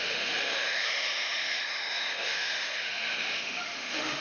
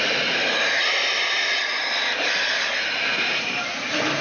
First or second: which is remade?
first